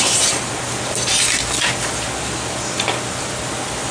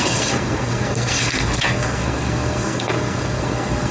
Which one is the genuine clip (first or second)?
first